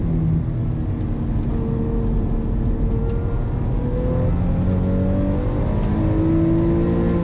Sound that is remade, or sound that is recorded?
recorded